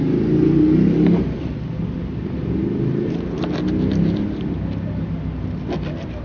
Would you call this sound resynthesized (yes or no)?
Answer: no